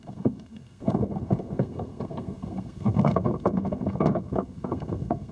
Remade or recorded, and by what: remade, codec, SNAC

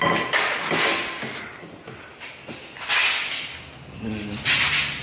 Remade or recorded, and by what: recorded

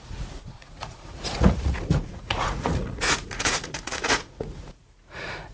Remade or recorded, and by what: remade, vocoder, Vocos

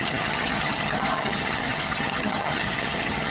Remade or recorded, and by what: remade, vocoder, HiFi-GAN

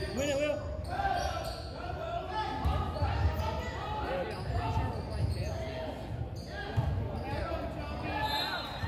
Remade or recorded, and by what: recorded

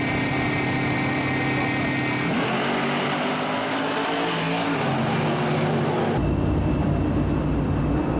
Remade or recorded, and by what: recorded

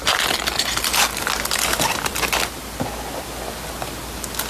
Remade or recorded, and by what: recorded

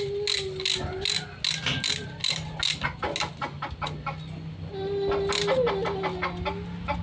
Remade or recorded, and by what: recorded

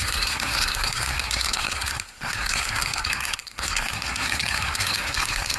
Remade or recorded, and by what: remade, codec, SNAC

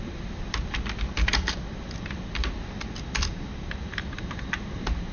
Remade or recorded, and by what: remade, vocoder, BigVGAN v2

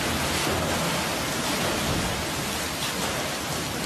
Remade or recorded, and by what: recorded